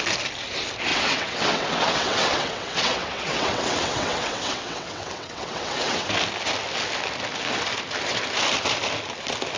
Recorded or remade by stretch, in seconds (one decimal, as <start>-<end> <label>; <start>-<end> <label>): 0.0-0.9 recorded; 0.9-6.1 remade; 6.1-9.6 recorded

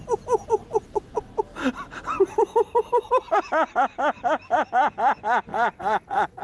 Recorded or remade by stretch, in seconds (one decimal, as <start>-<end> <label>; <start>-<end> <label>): 0.0-0.7 recorded; 0.7-1.3 remade; 1.3-5.5 recorded; 5.5-6.4 remade

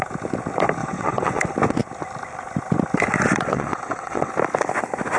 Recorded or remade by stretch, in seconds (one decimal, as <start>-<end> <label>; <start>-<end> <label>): 0.0-0.8 recorded; 0.8-1.4 remade; 1.4-3.5 recorded; 3.5-4.3 remade; 4.3-5.2 recorded

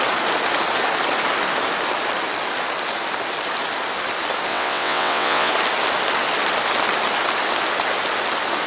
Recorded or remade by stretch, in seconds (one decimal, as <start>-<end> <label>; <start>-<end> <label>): 0.0-4.5 recorded; 4.5-5.5 remade; 5.5-8.7 recorded

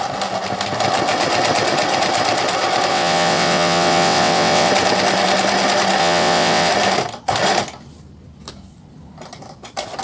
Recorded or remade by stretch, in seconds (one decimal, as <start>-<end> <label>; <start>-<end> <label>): 0.0-2.9 recorded; 2.9-4.7 remade; 4.7-6.0 recorded; 6.0-6.7 remade; 6.7-10.0 recorded

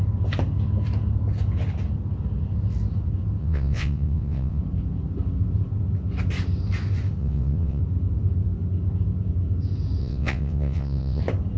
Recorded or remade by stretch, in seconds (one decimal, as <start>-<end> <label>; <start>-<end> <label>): 0.0-3.4 recorded; 3.4-4.6 remade; 4.6-7.2 recorded; 7.2-7.8 remade; 7.8-10.0 recorded; 10.0-11.2 remade; 11.2-11.6 recorded

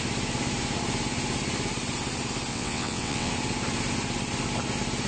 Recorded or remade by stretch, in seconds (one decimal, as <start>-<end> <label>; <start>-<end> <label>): 0.0-2.5 recorded; 2.5-3.3 remade; 3.3-5.1 recorded

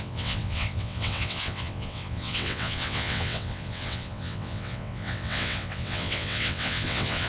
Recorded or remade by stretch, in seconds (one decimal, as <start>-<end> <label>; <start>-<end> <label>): 0.0-7.3 remade